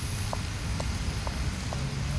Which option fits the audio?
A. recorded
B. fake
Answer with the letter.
A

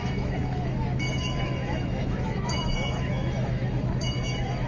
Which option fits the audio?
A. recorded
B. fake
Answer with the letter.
B